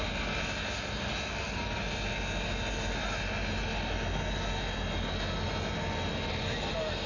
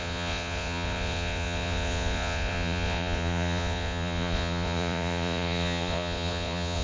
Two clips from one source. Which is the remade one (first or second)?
second